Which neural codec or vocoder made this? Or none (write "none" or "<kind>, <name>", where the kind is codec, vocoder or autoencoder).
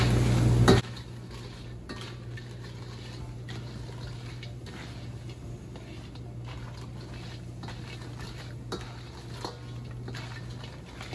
none